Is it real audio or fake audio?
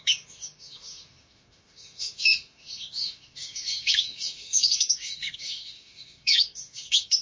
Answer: fake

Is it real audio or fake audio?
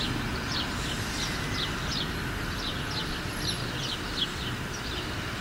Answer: real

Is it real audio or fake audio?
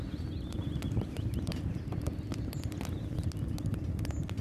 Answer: real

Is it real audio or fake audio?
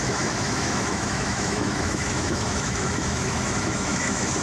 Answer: fake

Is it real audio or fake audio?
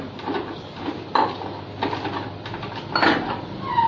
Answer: real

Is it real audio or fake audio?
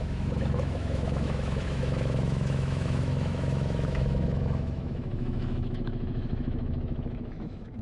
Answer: fake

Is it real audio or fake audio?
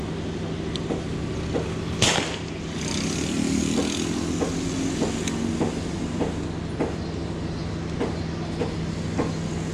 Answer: real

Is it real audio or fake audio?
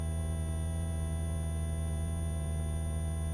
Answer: real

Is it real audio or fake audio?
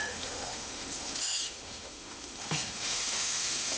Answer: fake